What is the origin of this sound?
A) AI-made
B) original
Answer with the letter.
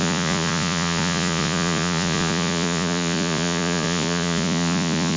A